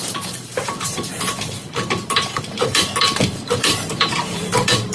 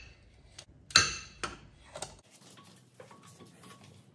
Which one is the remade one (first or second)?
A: first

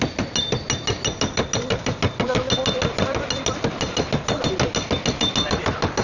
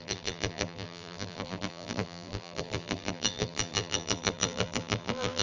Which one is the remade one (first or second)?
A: second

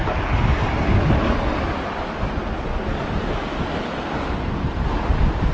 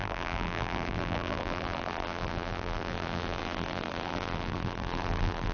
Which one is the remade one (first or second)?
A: second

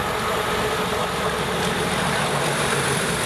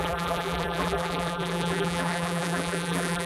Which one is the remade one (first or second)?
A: second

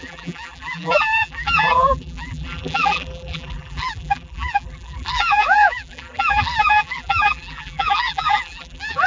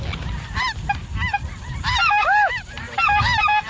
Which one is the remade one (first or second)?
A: first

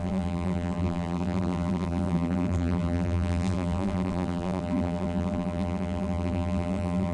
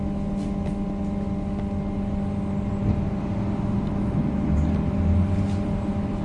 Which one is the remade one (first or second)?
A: first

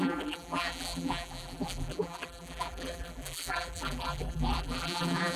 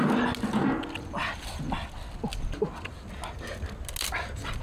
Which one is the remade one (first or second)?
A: first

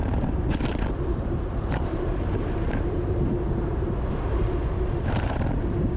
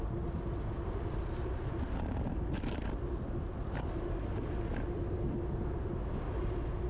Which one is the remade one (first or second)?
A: first